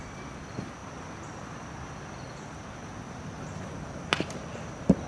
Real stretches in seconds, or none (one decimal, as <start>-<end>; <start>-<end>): 0.0-5.1